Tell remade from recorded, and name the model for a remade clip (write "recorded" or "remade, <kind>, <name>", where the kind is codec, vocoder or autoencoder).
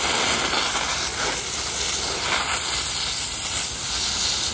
recorded